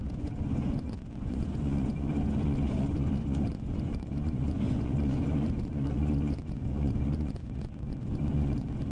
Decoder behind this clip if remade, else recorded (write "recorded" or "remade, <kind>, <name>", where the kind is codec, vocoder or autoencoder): remade, vocoder, Vocos